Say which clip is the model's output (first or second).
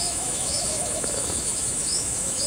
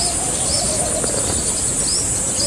first